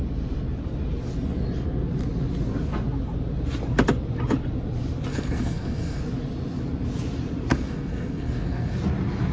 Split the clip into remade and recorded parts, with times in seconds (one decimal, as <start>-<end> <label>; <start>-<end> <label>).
0.0-5.1 recorded; 5.1-6.0 remade; 6.0-7.5 recorded; 7.5-8.8 remade; 8.8-9.3 recorded